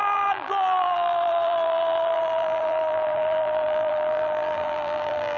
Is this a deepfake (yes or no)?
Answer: yes